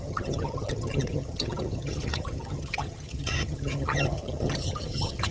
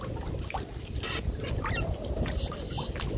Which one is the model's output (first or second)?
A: first